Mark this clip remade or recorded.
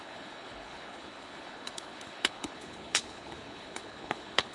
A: remade